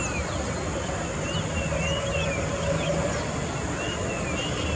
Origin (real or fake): real